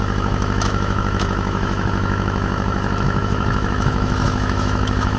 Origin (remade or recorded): remade